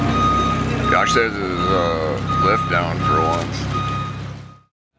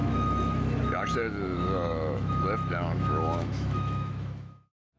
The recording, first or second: first